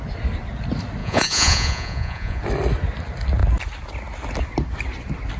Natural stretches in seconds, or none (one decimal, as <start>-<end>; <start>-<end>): 0.0-1.0; 2.4-5.4